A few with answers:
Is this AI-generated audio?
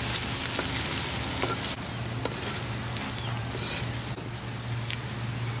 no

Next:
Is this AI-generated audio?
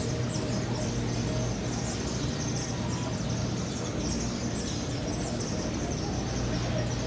no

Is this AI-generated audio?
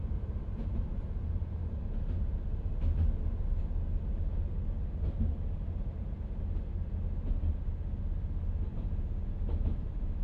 no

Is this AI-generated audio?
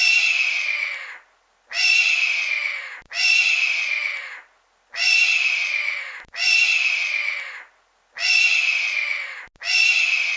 no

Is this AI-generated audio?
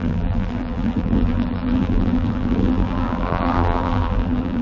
yes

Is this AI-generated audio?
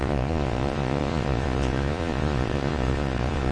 yes